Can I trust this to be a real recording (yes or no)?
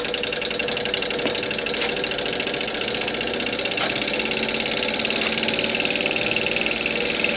yes